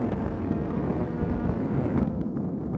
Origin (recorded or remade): remade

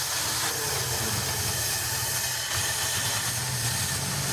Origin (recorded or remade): recorded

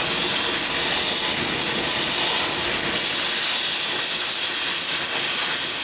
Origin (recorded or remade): recorded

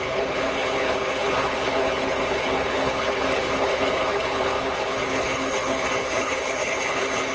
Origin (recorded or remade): remade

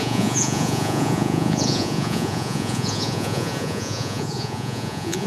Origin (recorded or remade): remade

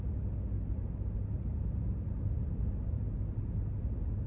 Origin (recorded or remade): recorded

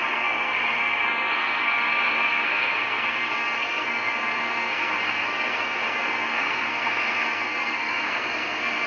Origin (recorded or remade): remade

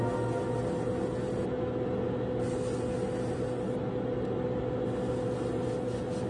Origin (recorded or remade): recorded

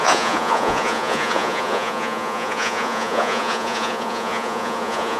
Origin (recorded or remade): remade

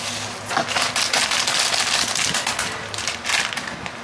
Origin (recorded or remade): recorded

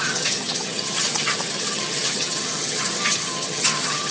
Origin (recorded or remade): remade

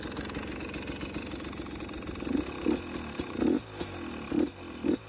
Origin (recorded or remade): recorded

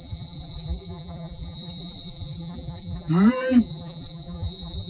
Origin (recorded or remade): remade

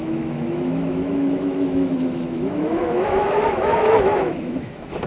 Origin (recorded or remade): remade